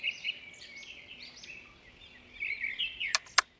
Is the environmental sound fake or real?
real